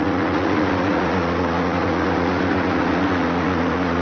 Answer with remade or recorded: remade